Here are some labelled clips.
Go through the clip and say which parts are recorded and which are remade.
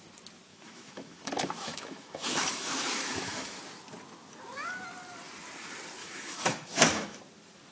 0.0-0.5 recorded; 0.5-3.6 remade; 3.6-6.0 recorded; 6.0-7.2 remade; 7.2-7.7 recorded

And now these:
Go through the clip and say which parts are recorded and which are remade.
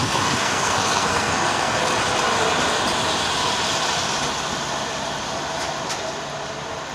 0.0-1.8 remade; 1.8-6.9 recorded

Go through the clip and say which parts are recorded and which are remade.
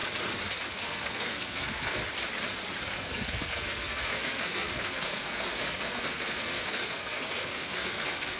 0.0-0.7 recorded; 0.7-2.0 remade; 2.0-2.8 recorded; 2.8-8.4 remade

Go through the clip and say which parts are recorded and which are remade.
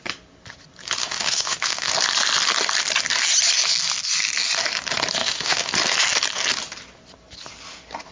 0.0-1.0 recorded; 1.0-1.9 remade; 1.9-5.2 recorded; 5.2-5.7 remade; 5.7-8.1 recorded